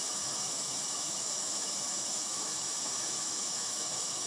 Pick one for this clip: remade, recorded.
remade